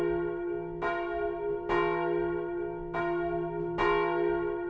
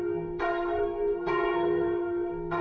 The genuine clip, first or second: first